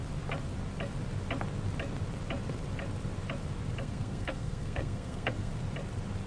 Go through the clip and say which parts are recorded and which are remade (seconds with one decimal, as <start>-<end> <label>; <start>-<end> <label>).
0.0-3.8 recorded; 3.8-5.5 remade; 5.5-6.3 recorded